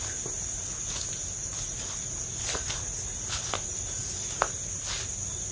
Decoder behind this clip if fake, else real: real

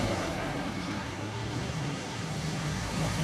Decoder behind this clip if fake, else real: fake, codec, SNAC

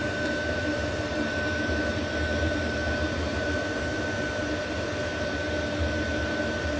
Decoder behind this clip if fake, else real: fake, vocoder, BigVGAN v2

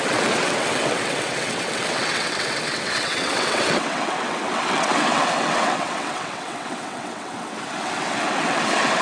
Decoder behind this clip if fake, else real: fake, vocoder, WaveNeXt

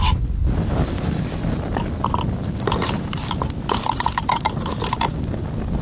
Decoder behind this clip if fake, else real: fake, vocoder, BigVGAN v2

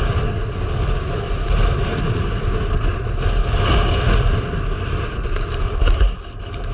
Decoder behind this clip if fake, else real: real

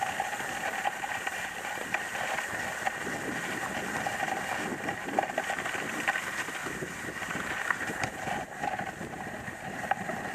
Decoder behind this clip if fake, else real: real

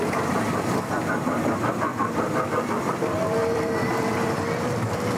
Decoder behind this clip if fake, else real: fake, vocoder, BigVGAN v2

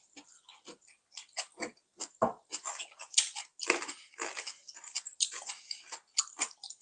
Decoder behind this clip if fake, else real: real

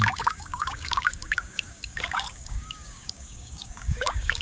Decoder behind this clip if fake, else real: fake, codec, DAC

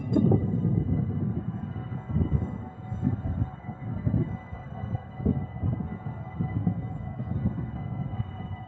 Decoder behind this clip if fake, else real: fake, codec, SNAC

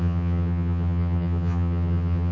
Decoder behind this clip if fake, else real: fake, vocoder, HiFi-GAN